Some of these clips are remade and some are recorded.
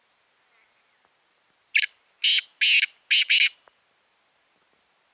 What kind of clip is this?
recorded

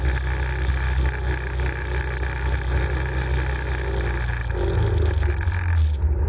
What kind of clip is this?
recorded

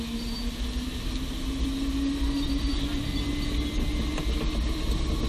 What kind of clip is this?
recorded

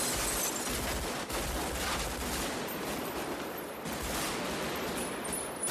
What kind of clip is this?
recorded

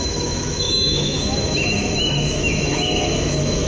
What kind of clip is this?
remade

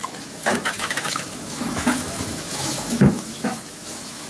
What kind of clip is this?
remade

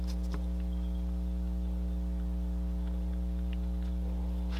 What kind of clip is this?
recorded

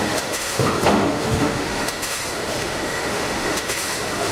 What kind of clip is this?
remade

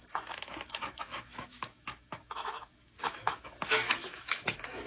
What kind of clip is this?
remade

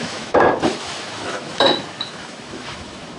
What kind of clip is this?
remade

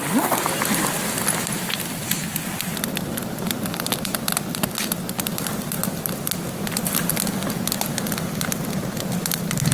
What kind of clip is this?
recorded